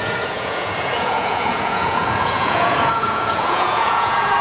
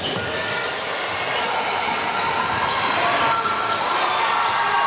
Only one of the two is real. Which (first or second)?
second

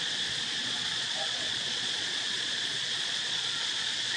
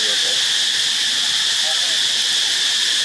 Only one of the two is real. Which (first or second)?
second